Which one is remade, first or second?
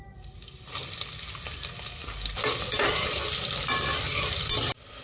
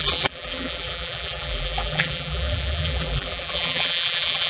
second